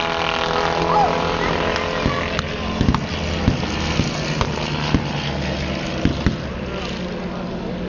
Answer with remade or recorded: recorded